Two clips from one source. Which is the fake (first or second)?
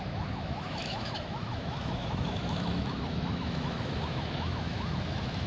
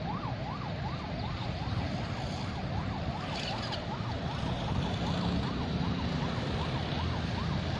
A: first